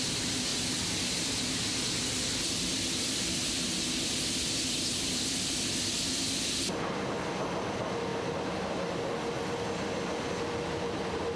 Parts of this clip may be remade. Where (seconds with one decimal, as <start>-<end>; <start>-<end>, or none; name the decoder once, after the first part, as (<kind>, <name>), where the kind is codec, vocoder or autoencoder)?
none